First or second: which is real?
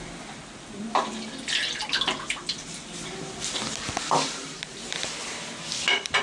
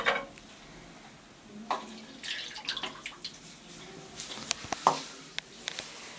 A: second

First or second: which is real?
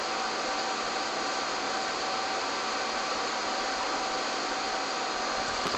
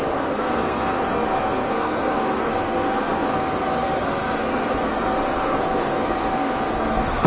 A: first